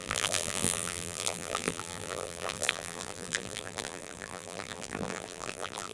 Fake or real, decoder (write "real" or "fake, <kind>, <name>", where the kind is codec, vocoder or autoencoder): fake, vocoder, BigVGAN v2